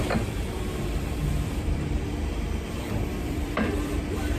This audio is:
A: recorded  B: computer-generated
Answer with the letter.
B